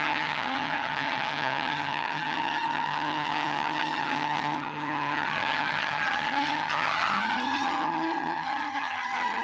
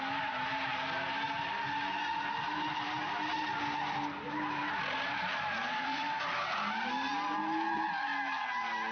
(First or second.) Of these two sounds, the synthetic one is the first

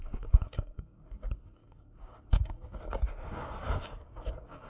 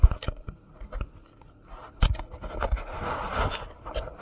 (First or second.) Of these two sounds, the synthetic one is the first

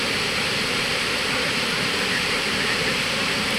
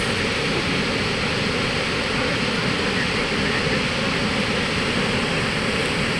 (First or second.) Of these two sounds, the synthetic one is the first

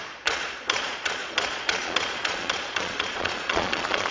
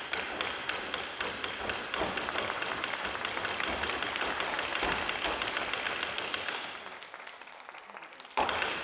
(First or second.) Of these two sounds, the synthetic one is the first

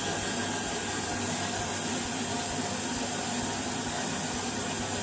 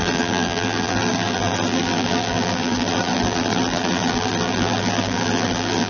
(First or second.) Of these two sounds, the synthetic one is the second